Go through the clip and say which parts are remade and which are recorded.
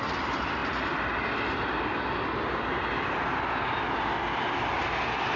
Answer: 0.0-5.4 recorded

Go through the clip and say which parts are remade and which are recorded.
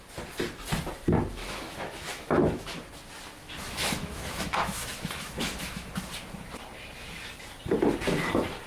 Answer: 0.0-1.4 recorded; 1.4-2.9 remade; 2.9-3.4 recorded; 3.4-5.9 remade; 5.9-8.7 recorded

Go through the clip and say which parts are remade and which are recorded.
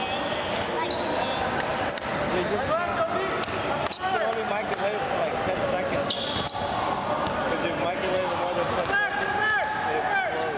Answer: 0.0-10.6 recorded